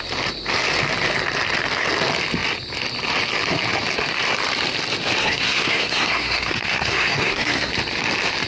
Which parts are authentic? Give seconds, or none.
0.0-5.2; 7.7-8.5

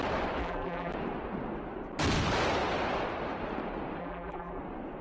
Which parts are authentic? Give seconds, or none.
0.0-0.4; 0.9-4.0; 4.6-5.0

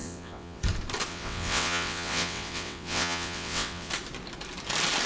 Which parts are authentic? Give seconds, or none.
0.6-1.1; 3.9-5.1

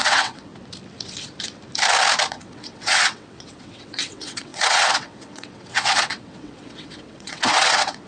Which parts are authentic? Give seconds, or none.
0.5-2.3

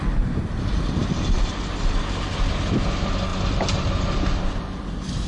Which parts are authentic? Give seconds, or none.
0.0-5.3

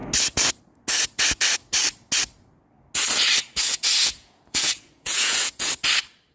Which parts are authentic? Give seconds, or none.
0.0-4.0; 5.7-6.3

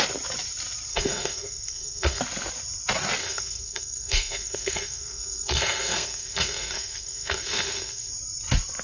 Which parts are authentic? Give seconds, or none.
0.0-0.9; 2.2-3.2; 8.1-8.8